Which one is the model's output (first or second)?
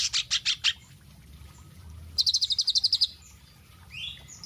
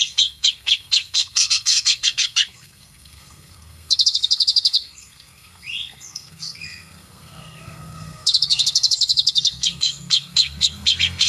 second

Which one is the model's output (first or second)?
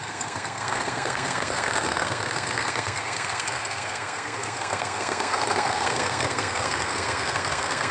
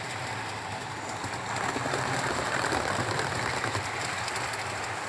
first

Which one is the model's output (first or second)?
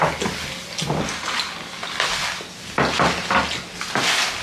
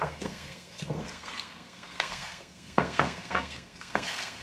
second